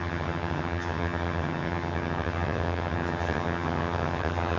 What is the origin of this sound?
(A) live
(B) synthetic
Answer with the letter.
B